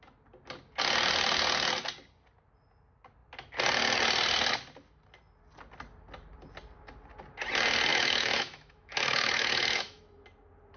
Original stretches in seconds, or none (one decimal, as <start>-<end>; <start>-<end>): 0.0-7.9; 10.0-10.8